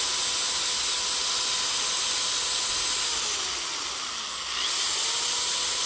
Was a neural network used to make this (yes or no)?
no